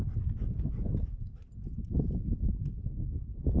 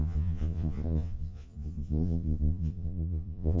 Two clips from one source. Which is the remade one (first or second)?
second